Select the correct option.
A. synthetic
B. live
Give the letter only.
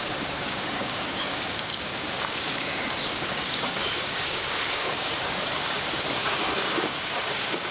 A